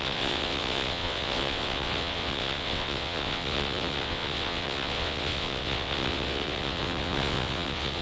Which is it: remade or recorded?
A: remade